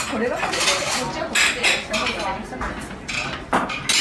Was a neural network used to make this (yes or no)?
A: no